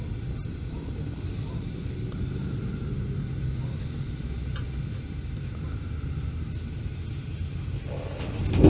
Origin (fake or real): real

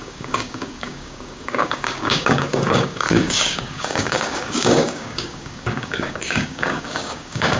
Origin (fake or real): fake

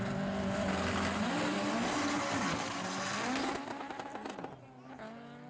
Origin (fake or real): real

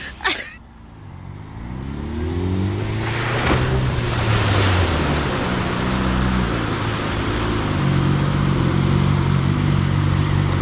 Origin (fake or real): real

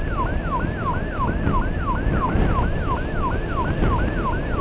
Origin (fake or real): real